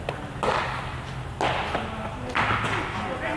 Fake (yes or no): no